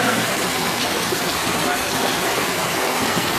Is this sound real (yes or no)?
no